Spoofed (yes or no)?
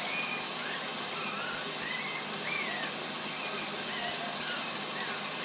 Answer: no